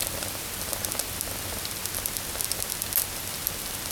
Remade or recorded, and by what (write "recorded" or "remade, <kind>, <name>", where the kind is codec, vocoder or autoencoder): recorded